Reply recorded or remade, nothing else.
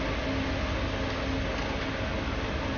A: recorded